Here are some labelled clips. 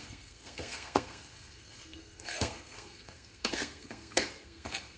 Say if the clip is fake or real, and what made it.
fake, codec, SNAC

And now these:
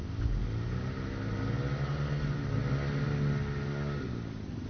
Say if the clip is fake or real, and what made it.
real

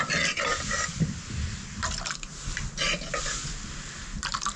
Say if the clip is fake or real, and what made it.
real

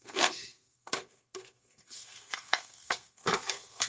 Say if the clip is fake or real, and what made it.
fake, codec, SNAC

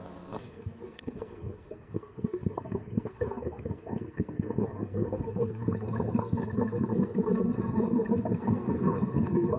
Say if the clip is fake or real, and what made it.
fake, codec, SNAC